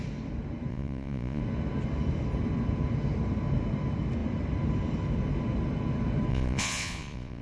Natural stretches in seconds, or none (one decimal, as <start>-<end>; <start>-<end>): 0.0-0.7; 1.4-6.3